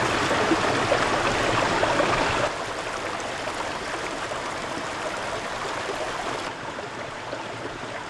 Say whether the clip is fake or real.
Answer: real